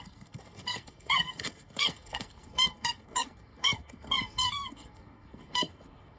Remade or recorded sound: remade